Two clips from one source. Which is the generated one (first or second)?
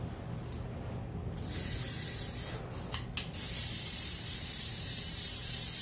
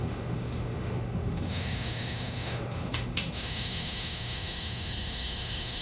second